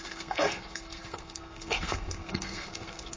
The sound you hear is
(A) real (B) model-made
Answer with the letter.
B